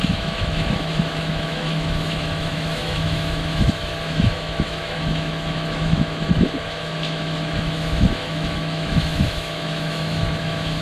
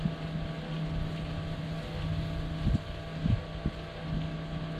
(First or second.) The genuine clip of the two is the second